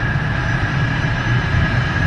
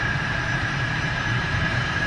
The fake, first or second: second